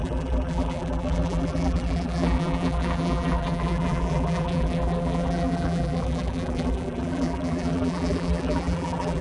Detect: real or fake fake